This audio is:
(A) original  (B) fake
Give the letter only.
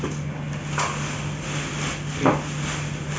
A